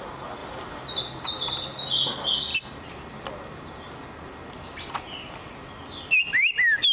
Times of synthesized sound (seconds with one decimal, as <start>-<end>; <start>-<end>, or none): none